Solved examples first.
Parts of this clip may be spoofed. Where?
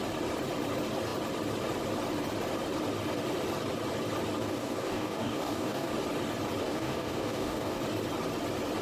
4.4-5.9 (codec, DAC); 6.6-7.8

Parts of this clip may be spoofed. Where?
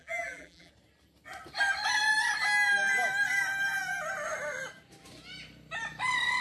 0.0-0.7 (vocoder, BigVGAN v2)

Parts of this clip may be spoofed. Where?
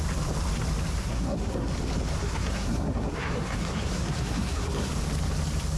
1.0-1.7 (codec, SNAC); 2.2-4.9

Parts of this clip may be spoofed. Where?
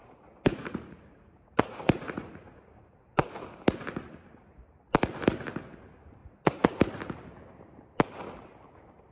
0.0-3.3 (vocoder, Vocos); 6.2-6.8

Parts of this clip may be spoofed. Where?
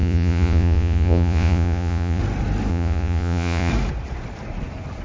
0.0-2.2 (vocoder, Vocos); 2.7-3.7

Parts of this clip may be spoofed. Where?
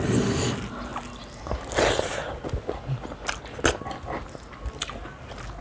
none